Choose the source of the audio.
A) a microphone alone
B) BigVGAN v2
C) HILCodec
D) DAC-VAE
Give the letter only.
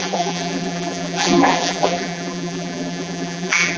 B